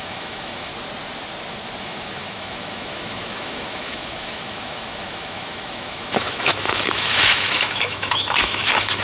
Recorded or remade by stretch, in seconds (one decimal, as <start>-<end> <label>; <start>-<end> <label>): 0.0-0.7 remade; 0.7-1.8 recorded; 1.8-9.0 remade